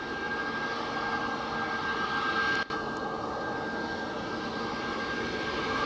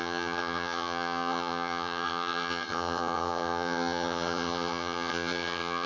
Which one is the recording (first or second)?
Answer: first